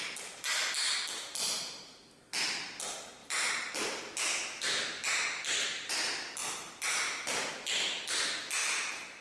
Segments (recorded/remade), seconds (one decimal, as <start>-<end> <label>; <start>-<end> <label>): 0.0-3.2 recorded; 3.2-5.2 remade; 5.2-6.4 recorded; 6.4-7.5 remade; 7.5-8.6 recorded; 8.6-9.2 remade